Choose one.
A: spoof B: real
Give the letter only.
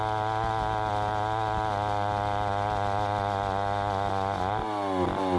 B